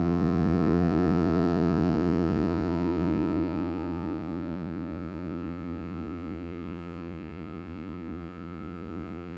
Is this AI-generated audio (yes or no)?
yes